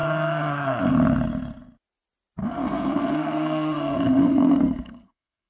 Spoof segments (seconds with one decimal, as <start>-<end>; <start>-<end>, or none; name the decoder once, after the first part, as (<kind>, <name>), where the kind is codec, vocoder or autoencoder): 0.0-0.8 (codec, SNAC); 2.4-5.5